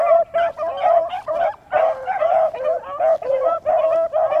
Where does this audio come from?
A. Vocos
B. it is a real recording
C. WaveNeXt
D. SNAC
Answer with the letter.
B